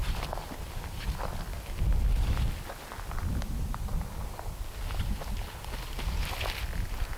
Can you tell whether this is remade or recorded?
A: recorded